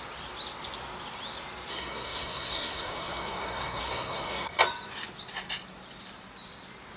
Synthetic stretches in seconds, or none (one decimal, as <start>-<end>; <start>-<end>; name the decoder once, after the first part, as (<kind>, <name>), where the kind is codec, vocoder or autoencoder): 1.7-4.6 (codec, SNAC)